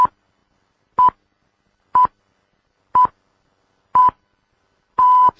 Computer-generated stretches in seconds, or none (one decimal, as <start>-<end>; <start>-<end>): 4.0-5.4